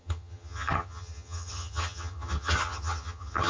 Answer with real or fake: fake